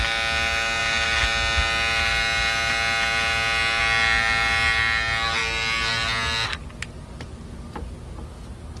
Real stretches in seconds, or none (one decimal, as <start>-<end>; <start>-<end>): 0.0-8.8